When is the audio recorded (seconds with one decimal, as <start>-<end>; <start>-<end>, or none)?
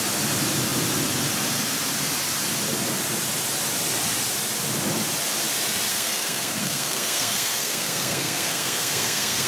0.0-5.9